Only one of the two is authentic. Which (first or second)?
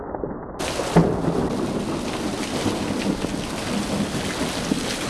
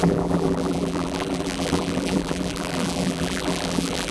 first